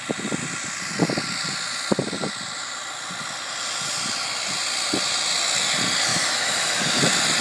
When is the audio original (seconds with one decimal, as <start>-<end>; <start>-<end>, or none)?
0.0-6.1; 7.0-7.4